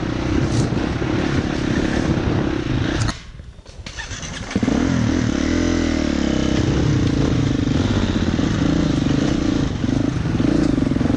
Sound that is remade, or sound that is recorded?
recorded